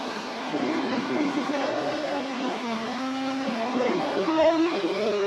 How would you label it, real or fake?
fake